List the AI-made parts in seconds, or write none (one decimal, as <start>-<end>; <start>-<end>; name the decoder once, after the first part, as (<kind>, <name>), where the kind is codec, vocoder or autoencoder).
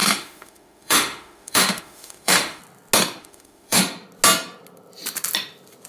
0.0-2.6 (autoencoder, DAC-VAE); 3.2-3.8